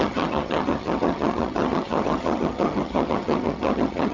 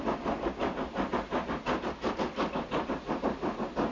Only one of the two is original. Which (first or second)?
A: second